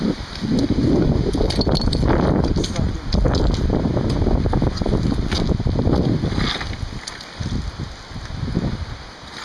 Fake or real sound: real